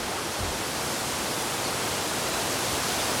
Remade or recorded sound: remade